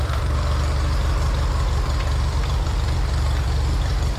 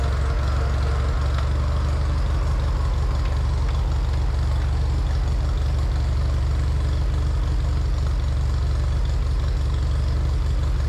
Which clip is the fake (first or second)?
first